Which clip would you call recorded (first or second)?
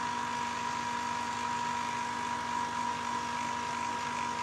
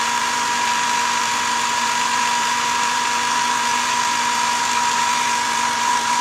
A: first